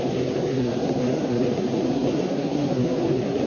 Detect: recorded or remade remade